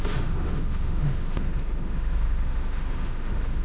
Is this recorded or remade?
remade